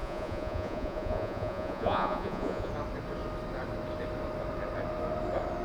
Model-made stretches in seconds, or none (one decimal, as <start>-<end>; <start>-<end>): 0.0-2.7